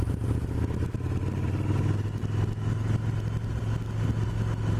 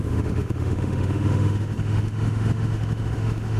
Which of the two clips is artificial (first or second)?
second